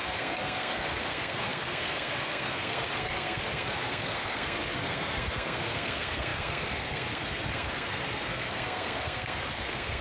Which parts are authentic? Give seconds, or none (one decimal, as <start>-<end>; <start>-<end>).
none